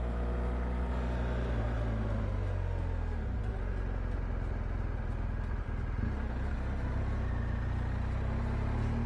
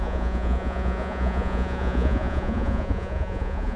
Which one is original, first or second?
first